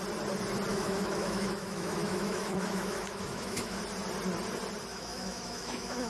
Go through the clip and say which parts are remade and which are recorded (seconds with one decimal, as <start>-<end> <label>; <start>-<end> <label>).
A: 0.0-0.7 recorded; 0.7-3.8 remade; 3.8-4.9 recorded; 4.9-6.1 remade